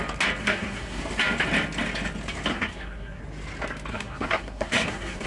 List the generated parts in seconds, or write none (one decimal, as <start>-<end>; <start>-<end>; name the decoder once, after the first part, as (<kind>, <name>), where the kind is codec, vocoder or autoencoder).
0.4-1.0 (codec, SNAC); 2.5-3.2; 3.9-5.3